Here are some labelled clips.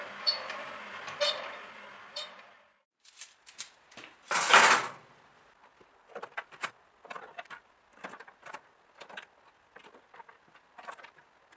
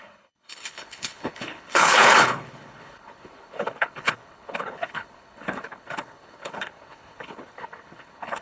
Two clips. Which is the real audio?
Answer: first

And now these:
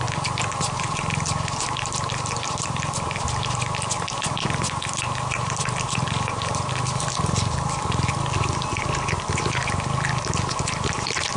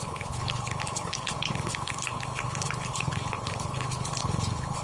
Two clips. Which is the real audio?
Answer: first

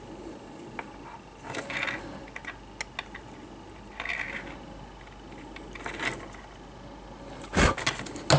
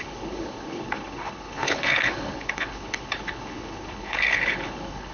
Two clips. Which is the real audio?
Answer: first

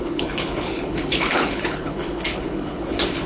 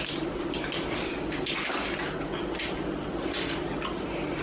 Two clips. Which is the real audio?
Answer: second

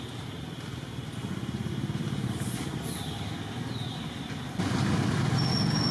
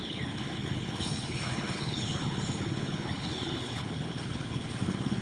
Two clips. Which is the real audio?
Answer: first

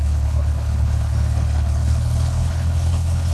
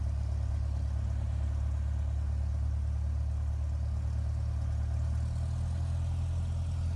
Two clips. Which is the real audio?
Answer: second